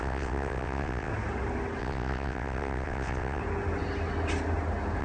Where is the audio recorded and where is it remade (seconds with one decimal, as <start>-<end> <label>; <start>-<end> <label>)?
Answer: 0.0-1.1 remade; 1.1-1.8 recorded; 1.8-3.4 remade; 3.4-5.0 recorded